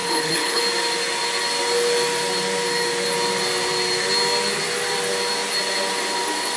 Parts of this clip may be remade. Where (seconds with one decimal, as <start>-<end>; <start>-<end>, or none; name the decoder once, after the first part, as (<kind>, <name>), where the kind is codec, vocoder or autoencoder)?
0.0-0.6 (codec, HILCodec)